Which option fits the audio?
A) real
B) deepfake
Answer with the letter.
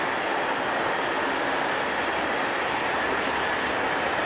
A